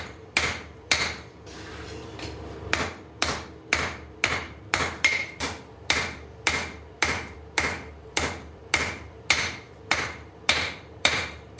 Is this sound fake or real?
fake